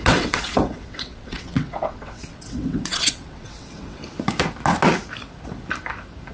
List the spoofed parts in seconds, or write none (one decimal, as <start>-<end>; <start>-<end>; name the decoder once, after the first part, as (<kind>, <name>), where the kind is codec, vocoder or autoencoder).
0.0-4.0 (vocoder, WaveNeXt)